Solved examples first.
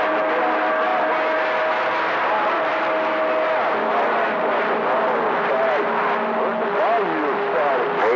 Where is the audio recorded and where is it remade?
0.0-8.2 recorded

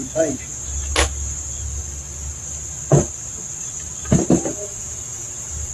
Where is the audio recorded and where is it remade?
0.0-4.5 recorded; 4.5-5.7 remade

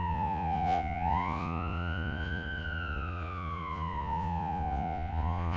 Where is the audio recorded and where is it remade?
0.0-5.6 remade

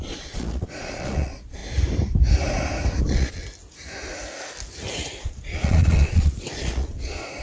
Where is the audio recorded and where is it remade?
0.0-1.6 remade; 1.6-3.0 recorded; 3.0-3.4 remade; 3.4-5.2 recorded; 5.2-7.4 remade

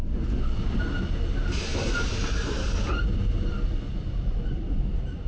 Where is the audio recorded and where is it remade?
0.0-5.3 recorded